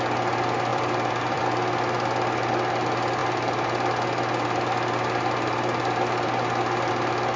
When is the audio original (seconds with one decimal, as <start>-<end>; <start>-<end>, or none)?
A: 0.0-0.7; 1.4-7.4